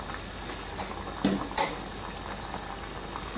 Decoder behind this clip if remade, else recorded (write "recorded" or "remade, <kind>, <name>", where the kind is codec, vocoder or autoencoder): recorded